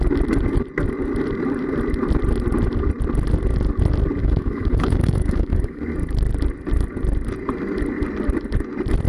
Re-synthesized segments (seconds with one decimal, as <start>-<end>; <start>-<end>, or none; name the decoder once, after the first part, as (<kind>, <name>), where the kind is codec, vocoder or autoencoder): 4.2-5.8 (autoencoder, DAC-VAE)